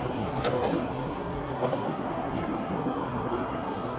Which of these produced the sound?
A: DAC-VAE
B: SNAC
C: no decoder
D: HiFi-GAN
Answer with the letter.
B